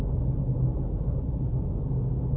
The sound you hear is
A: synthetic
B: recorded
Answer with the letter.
B